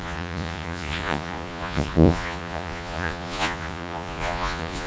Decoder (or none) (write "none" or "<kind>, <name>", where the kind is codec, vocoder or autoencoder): vocoder, Vocos